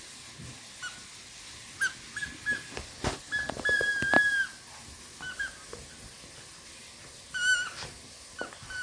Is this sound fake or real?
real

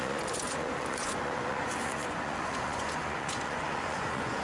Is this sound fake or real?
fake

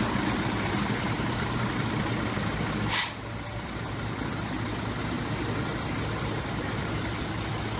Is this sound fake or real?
real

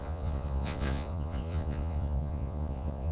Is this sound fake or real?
fake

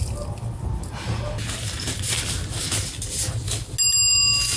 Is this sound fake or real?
real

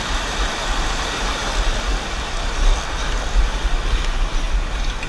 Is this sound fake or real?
real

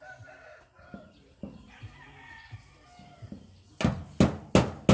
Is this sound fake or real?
real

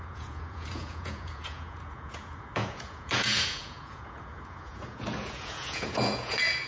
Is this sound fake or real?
fake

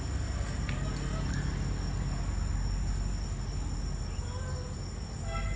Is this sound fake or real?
real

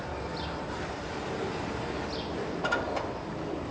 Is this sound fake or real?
real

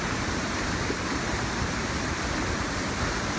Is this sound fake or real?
real